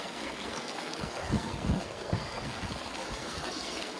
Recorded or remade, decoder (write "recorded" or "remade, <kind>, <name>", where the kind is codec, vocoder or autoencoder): remade, codec, SNAC